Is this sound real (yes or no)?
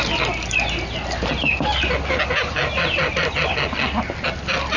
yes